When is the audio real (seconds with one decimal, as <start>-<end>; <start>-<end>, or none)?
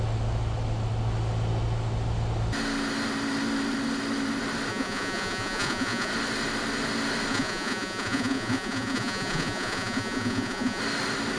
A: 0.0-4.7; 6.1-7.3; 10.8-11.4